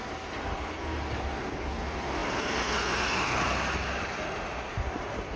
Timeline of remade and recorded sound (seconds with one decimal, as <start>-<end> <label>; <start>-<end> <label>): 0.0-5.4 recorded